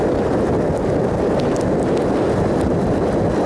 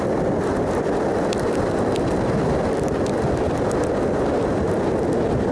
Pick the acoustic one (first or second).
first